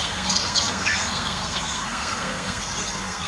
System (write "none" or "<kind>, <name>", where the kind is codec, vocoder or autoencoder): codec, SNAC